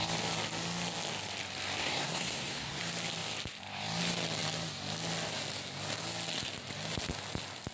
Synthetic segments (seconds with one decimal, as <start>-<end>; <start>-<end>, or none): 1.8-2.8